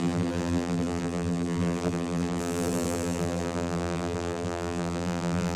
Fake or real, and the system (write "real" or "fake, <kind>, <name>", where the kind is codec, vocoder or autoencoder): fake, vocoder, BigVGAN v2